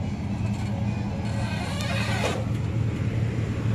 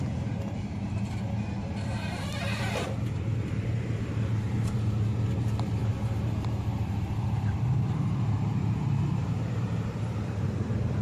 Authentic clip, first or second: first